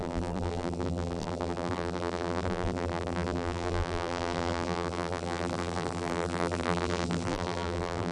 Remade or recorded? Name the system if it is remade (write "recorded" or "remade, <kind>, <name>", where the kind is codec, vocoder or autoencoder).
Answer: remade, vocoder, BigVGAN v2